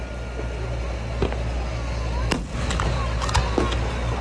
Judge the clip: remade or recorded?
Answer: recorded